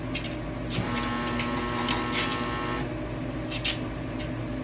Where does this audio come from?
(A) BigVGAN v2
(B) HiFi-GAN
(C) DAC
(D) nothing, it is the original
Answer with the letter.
D